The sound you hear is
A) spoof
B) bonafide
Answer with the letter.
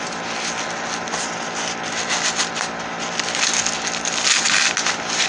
B